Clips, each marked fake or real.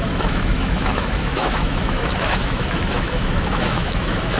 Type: fake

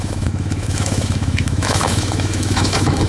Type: fake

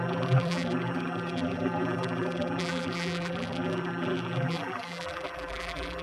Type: fake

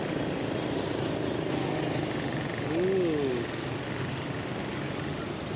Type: real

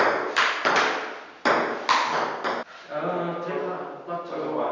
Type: real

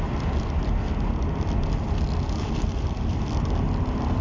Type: real